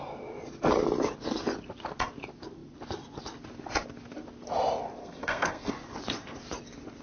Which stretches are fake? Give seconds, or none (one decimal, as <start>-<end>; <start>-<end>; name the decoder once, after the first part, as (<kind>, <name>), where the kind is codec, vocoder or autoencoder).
5.0-5.7 (codec, SNAC)